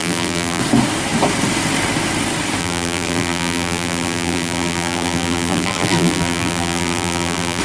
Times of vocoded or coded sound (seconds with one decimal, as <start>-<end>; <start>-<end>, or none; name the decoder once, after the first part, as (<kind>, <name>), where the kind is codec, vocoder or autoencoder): 0.0-0.6 (vocoder, BigVGAN v2); 2.6-7.6

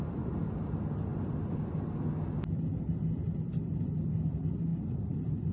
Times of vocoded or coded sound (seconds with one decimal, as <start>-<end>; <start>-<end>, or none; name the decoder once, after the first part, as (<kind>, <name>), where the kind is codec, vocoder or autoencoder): 4.7-5.5 (vocoder, BigVGAN v2)

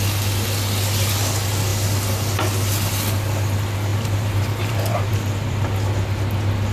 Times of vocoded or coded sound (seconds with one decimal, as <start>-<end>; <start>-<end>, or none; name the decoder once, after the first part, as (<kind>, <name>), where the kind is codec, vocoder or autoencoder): 3.9-5.6 (vocoder, BigVGAN v2)

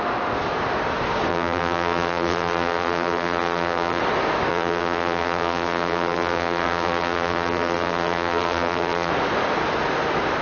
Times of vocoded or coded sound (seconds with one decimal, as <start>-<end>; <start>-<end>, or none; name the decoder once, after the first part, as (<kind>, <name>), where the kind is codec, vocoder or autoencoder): 1.3-4.0 (vocoder, BigVGAN v2); 4.5-9.1

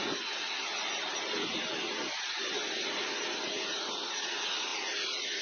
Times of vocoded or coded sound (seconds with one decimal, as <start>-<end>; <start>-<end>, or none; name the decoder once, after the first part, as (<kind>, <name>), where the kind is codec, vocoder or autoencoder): 1.1-4.3 (vocoder, BigVGAN v2)